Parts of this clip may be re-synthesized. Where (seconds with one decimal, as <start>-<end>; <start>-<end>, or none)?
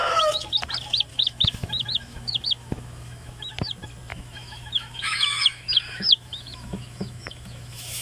0.0-0.5; 1.1-3.5; 4.1-8.0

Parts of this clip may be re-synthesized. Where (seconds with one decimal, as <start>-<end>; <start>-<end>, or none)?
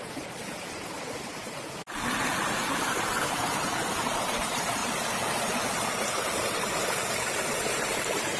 0.0-4.8; 5.9-6.8; 7.4-8.4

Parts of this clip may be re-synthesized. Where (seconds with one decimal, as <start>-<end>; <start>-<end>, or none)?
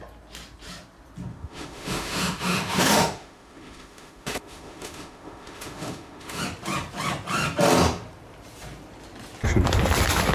1.3-6.4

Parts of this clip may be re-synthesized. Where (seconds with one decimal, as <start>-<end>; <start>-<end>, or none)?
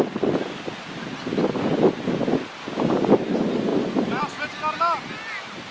2.6-3.1